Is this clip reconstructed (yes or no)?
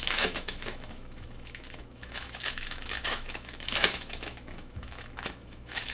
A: yes